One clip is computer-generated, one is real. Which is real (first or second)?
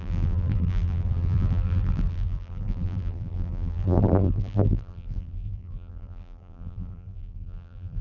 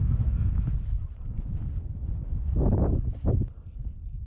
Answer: second